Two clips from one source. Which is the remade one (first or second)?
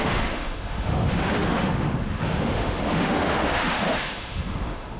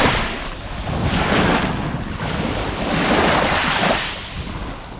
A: first